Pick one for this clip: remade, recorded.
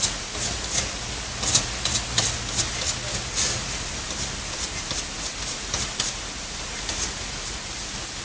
recorded